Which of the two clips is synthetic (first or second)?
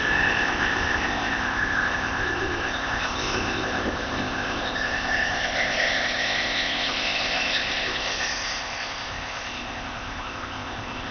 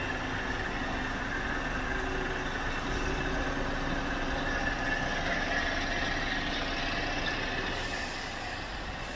first